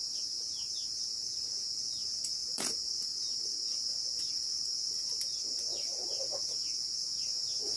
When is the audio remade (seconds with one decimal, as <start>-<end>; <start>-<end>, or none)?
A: 0.0-7.8